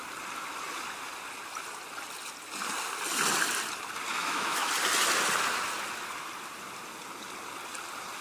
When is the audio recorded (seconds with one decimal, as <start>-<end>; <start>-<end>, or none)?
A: 0.0-4.1; 4.7-8.2